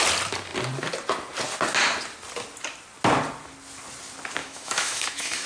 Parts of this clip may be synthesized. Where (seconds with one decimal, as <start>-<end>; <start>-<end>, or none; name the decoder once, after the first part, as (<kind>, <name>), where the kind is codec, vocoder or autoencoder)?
4.4-5.5 (autoencoder, DAC-VAE)